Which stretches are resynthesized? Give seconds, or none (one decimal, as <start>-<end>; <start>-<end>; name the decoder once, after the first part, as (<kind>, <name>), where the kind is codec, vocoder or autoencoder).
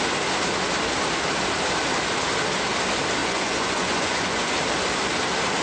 3.2-4.5 (vocoder, Vocos)